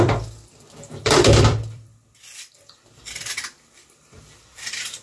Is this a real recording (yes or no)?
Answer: no